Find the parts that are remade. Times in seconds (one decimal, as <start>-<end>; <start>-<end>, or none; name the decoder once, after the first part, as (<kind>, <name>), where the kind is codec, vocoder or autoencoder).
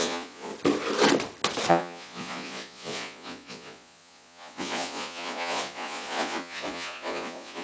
0.0-0.5 (vocoder, Vocos); 1.7-7.6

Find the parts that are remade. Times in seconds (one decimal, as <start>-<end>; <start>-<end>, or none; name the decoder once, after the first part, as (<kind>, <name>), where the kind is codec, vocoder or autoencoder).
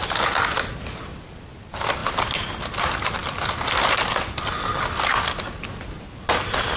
none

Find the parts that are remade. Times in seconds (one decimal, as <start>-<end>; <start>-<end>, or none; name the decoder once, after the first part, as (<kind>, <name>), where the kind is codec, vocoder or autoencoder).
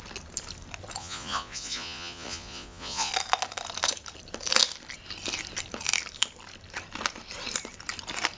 1.0-3.1 (vocoder, Vocos)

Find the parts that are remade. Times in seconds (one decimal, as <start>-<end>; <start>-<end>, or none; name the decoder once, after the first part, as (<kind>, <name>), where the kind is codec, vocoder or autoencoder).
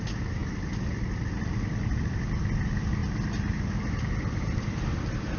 none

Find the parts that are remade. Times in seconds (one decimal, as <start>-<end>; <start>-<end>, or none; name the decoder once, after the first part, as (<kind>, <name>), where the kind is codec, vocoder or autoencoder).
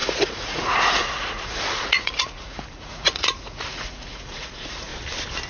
0.0-4.9 (vocoder, Vocos)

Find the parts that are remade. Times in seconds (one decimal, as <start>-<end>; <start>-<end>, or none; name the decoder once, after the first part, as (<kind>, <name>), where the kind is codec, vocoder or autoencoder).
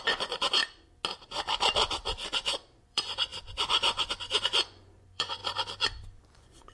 0.0-0.6 (vocoder, Vocos); 2.8-5.4; 6.2-6.7